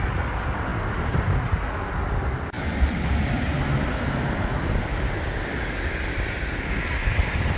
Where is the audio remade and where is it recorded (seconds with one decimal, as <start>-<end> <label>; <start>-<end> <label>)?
0.0-7.6 recorded